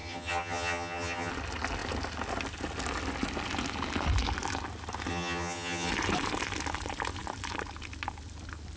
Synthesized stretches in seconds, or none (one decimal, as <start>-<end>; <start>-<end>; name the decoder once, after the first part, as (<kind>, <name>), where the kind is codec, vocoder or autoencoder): 0.0-1.3 (vocoder, HiFi-GAN); 5.1-5.9